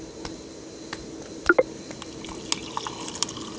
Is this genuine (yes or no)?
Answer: yes